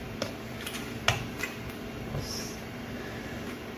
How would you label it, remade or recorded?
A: recorded